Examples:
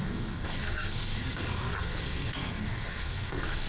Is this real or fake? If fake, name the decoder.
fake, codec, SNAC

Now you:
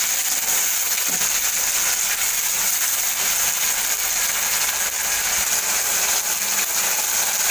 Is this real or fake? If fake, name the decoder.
real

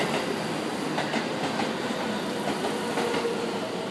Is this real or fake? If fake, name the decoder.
real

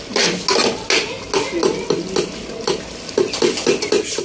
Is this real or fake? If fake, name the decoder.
real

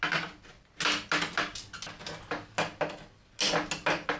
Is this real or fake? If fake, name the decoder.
real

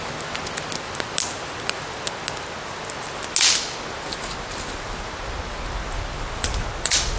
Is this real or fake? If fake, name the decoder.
real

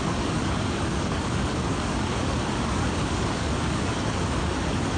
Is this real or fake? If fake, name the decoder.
fake, codec, DAC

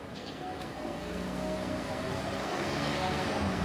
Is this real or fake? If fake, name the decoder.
fake, codec, SNAC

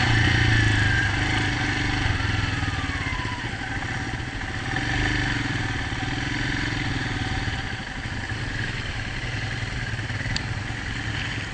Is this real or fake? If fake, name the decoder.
real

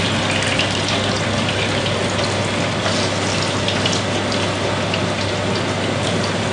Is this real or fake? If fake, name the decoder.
real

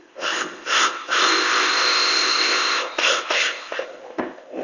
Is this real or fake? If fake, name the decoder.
fake, codec, ZipCodec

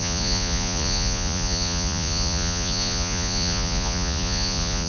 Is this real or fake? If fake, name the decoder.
fake, vocoder, Vocos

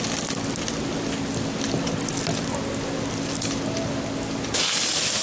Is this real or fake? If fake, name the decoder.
real